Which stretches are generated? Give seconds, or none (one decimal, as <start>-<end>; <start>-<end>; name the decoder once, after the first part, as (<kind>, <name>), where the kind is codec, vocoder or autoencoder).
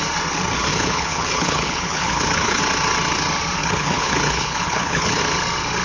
0.7-2.6 (codec, HILCodec); 3.6-5.2